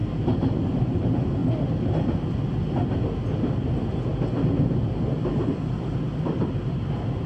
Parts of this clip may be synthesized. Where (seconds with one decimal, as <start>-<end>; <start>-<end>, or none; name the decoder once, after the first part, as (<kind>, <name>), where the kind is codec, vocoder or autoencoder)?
0.0-1.4 (vocoder, BigVGAN v2); 5.8-7.3